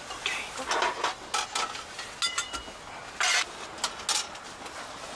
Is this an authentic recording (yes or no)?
yes